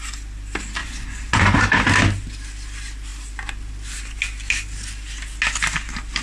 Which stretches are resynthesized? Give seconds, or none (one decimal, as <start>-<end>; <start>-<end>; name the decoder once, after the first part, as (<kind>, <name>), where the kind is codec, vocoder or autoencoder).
0.8-1.6 (vocoder, Vocos)